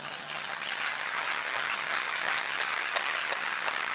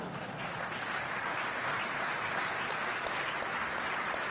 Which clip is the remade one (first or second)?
first